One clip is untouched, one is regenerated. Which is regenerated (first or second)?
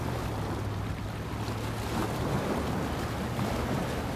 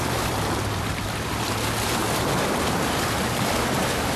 second